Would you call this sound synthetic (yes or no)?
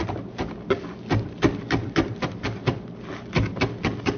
no